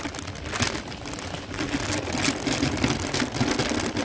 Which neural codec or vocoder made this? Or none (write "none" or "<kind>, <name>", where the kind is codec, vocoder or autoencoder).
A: none